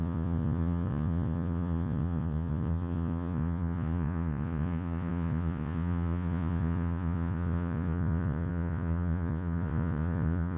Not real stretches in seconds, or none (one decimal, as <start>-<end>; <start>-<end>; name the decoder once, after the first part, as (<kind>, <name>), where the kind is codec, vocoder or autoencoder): 0.0-10.6 (vocoder, Vocos)